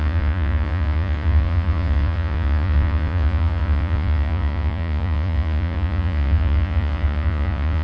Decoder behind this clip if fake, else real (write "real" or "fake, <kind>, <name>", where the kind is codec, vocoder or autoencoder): fake, vocoder, Vocos